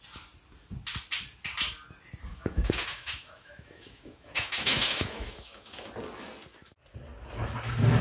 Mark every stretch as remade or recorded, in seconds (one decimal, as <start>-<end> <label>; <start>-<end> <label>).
0.0-2.3 recorded; 2.3-5.9 remade; 5.9-8.0 recorded

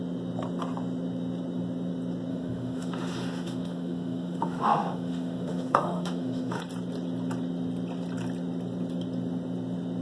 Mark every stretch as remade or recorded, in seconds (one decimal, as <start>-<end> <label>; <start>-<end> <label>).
0.0-2.3 recorded; 2.3-6.6 remade; 6.6-10.0 recorded

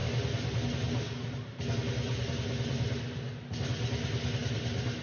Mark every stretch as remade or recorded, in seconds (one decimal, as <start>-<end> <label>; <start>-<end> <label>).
0.0-5.0 recorded